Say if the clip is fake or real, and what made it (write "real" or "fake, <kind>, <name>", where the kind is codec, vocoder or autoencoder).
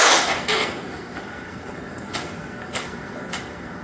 fake, codec, SNAC